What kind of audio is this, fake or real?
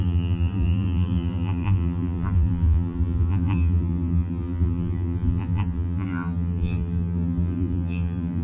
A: fake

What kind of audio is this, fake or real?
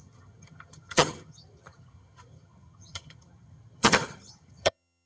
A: fake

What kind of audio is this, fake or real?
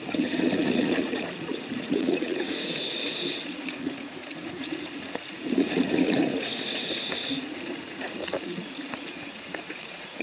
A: fake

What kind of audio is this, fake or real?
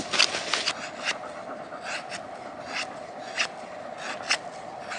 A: real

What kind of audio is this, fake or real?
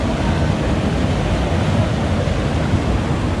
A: real